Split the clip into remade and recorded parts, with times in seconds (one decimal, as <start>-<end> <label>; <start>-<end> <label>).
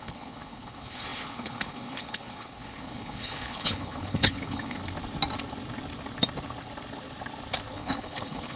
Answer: 0.0-4.8 remade; 4.8-7.7 recorded; 7.7-8.6 remade